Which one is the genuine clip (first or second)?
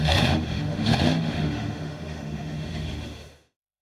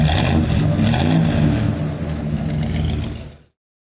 second